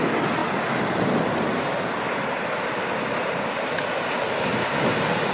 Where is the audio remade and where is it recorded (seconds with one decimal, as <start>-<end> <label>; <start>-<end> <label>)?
0.0-5.3 recorded